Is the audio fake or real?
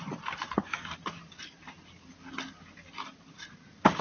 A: real